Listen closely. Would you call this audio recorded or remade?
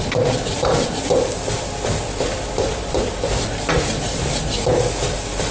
recorded